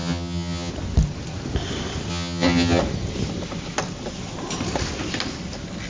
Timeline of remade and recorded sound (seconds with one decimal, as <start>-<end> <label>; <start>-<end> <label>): 0.0-0.7 remade; 0.7-2.1 recorded; 2.1-2.8 remade; 2.8-5.9 recorded